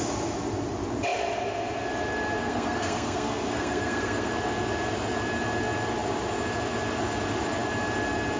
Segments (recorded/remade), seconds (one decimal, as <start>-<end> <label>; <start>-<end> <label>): 0.0-2.4 recorded; 2.4-4.3 remade; 4.3-8.4 recorded